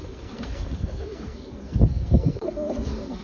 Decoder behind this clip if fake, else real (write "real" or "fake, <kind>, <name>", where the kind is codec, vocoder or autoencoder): fake, codec, SNAC